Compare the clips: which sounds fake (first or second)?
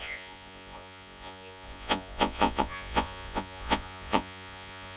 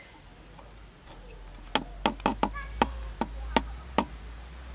first